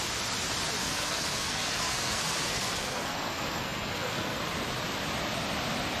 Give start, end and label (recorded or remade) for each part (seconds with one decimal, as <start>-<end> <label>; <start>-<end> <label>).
0.0-0.8 recorded; 0.8-4.4 remade; 4.4-6.0 recorded